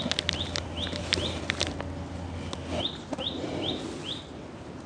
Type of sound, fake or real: real